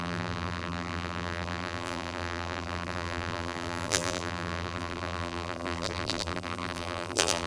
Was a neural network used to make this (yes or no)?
yes